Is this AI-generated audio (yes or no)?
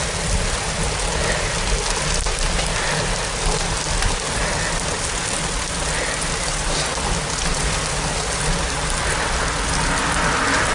no